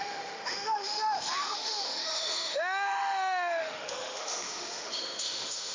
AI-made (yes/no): yes